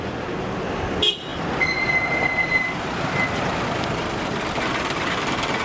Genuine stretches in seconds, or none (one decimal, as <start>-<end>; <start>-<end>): 0.0-5.6